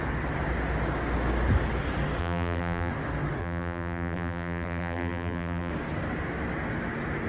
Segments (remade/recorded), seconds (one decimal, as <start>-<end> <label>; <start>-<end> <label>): 0.0-2.2 recorded; 2.2-2.9 remade; 2.9-3.4 recorded; 3.4-5.7 remade; 5.7-7.3 recorded